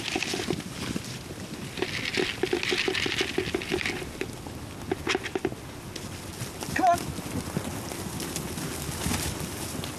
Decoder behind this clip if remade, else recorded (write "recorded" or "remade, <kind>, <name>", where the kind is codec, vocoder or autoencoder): recorded